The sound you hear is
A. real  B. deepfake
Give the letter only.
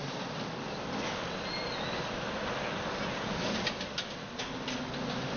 A